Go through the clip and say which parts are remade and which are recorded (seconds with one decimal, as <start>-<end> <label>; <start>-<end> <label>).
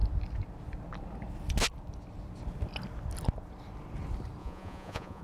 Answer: 0.0-4.4 recorded; 4.4-5.2 remade